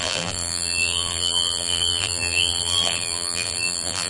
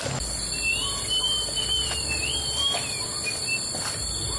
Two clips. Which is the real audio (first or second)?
second